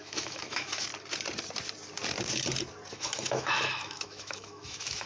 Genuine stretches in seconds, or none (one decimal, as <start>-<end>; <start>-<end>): 0.9-2.9